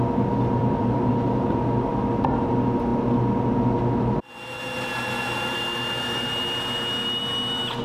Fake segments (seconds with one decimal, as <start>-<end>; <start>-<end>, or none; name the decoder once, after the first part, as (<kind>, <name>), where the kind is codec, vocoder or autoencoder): 0.6-1.1 (vocoder, BigVGAN v2)

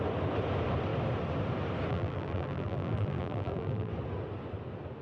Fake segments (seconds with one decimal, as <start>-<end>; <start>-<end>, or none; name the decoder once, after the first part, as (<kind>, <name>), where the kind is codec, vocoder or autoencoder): 1.9-3.9 (vocoder, BigVGAN v2)

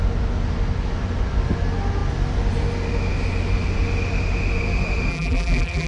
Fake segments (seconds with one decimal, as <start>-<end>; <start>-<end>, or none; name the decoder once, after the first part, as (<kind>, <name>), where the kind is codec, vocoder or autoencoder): 5.1-5.9 (vocoder, BigVGAN v2)